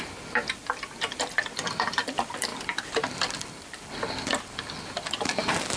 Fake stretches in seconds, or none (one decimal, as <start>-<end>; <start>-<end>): 0.0-5.8